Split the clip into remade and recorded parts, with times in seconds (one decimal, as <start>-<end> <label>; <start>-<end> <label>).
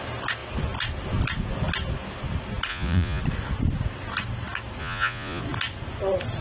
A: 0.0-2.7 recorded; 2.7-3.2 remade; 3.2-4.8 recorded; 4.8-5.4 remade; 5.4-6.4 recorded